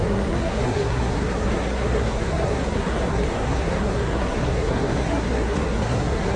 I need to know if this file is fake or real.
fake